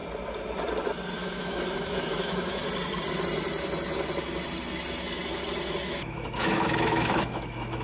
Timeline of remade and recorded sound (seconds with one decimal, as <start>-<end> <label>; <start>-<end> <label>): 0.0-1.2 recorded; 1.2-2.6 remade; 2.6-5.9 recorded; 5.9-7.8 remade